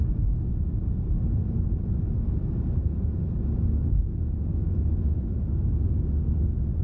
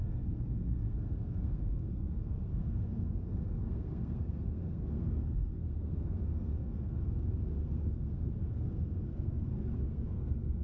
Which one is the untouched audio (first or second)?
first